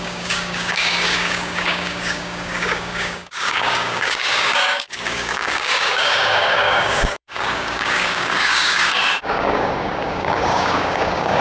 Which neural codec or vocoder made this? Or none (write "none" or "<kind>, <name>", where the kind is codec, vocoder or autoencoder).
codec, DAC